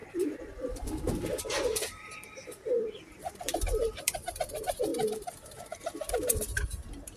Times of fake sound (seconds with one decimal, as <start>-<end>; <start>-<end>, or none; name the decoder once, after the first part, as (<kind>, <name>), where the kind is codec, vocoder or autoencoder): 0.0-7.2 (vocoder, BigVGAN v2)